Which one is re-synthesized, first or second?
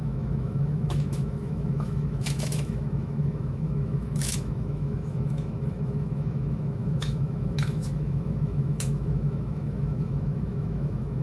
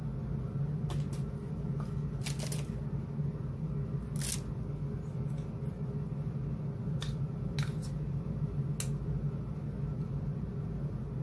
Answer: first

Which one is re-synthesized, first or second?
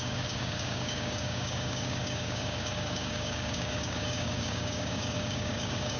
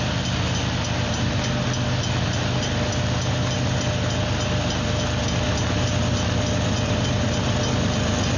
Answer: first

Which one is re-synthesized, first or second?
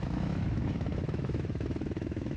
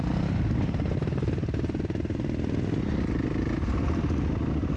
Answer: first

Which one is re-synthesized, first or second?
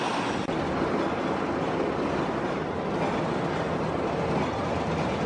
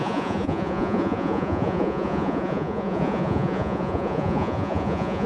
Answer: second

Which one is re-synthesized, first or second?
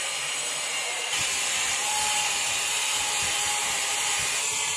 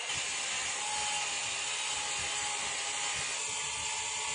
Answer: first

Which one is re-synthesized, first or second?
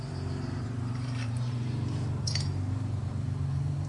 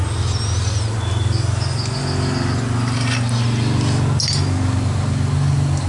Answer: first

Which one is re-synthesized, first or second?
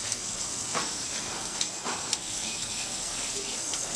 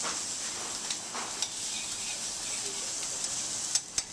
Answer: first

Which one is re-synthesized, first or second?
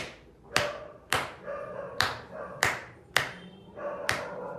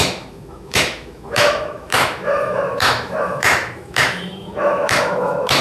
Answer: second